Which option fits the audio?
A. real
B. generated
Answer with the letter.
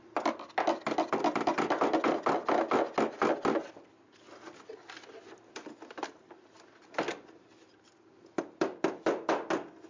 A